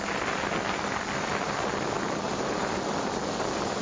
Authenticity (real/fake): real